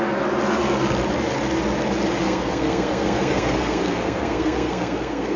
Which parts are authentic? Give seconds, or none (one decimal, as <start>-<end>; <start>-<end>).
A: 0.0-2.2